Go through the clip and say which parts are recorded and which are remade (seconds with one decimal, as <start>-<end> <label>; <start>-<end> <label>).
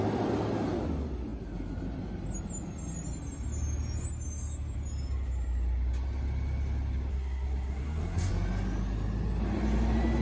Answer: 0.0-7.1 recorded; 7.1-8.3 remade; 8.3-10.2 recorded